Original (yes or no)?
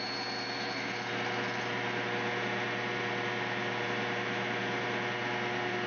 yes